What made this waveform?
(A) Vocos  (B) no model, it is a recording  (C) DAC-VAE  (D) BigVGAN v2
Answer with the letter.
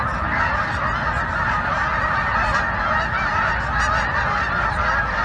B